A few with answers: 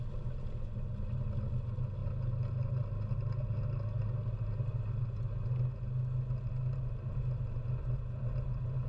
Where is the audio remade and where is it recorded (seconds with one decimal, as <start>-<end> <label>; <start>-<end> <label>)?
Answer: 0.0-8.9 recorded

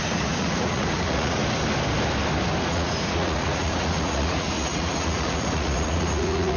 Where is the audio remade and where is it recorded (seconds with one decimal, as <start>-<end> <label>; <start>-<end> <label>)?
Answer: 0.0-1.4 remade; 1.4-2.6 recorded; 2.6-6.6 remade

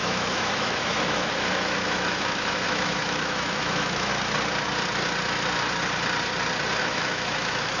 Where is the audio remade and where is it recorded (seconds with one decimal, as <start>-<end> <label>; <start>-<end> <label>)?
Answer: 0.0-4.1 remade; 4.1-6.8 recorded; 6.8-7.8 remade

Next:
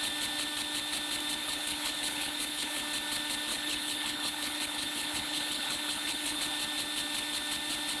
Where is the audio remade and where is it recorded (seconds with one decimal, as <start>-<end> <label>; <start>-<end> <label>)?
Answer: 0.0-1.4 recorded; 1.4-2.8 remade; 2.8-3.5 recorded; 3.5-6.4 remade; 6.4-8.0 recorded